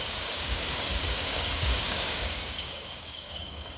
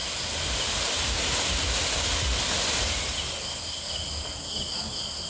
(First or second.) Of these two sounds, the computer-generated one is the first